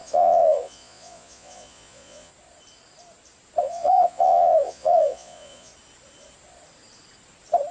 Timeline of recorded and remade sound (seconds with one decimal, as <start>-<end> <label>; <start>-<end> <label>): 0.0-2.3 remade; 2.3-3.6 recorded; 3.6-5.7 remade; 5.7-7.7 recorded